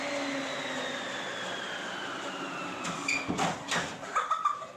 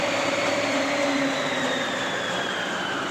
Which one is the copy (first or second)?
second